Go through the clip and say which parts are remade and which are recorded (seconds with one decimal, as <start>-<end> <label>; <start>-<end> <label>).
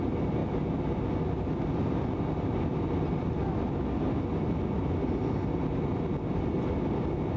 0.0-7.4 recorded